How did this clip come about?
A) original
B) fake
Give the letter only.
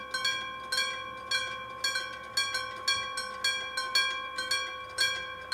A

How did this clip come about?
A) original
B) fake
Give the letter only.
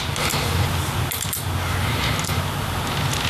A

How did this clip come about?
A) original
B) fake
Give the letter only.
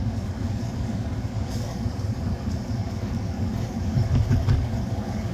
B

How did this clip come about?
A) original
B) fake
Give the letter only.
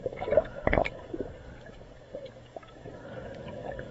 B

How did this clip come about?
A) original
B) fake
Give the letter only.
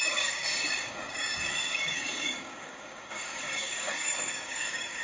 B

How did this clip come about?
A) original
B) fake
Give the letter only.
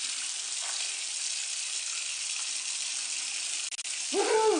A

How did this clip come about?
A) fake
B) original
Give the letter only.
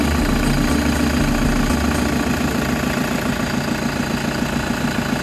B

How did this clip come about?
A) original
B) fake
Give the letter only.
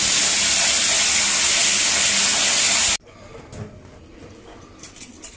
A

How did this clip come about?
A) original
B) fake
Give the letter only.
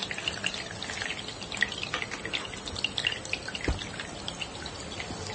A